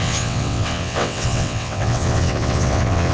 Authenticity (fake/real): fake